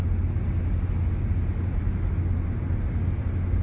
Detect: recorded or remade recorded